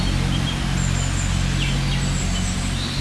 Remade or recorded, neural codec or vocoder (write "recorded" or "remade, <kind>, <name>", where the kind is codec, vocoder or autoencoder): recorded